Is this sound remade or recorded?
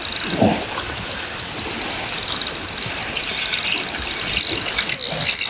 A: recorded